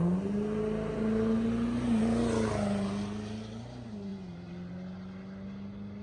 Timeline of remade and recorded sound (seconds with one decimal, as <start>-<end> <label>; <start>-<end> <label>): 0.0-6.0 recorded